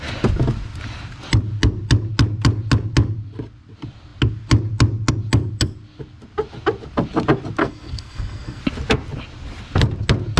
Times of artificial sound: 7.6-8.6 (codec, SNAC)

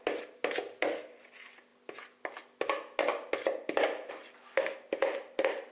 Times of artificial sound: none

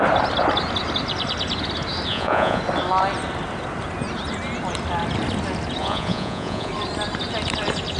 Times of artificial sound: 2.1-2.6 (vocoder, Vocos); 5.8-6.7

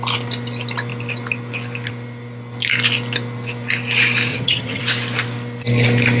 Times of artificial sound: 4.3-4.8 (vocoder, HiFi-GAN)

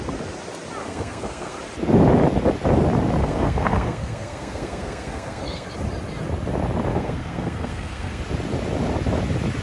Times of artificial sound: 0.8-1.6 (codec, SNAC); 3.2-5.7; 6.9-8.2